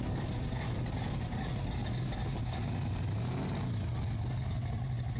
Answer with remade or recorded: recorded